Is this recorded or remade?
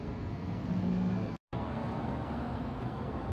remade